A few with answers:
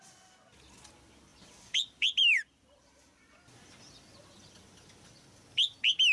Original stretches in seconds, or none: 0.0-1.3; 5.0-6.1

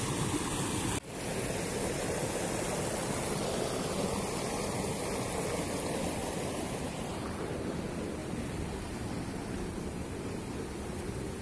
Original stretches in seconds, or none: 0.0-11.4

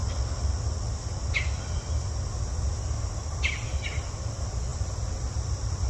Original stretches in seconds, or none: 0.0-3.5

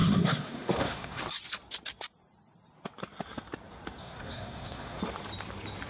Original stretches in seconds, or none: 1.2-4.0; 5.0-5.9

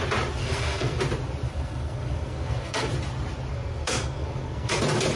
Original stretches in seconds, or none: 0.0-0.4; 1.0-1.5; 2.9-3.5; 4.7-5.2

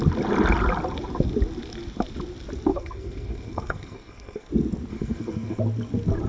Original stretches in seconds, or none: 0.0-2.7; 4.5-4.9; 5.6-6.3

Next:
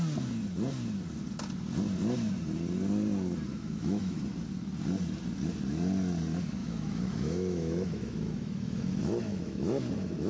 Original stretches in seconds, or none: 0.0-3.5; 4.2-6.6; 9.8-10.3

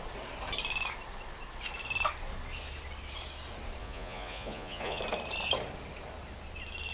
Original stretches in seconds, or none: 0.0-3.8; 5.0-6.9